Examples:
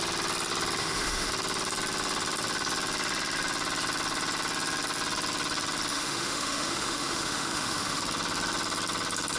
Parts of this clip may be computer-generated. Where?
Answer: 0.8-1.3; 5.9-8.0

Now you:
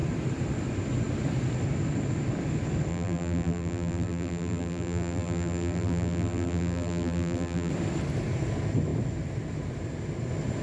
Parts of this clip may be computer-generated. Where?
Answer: 2.9-7.7

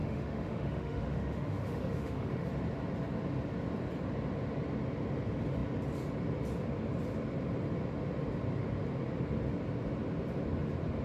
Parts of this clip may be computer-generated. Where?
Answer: 0.0-2.5

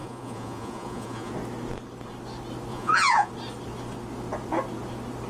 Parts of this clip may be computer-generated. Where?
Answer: 0.0-1.3; 2.7-3.3

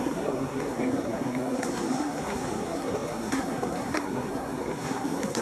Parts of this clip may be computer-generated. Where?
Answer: 0.0-5.4

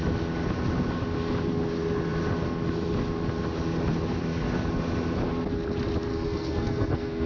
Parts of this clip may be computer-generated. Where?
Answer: 6.1-7.3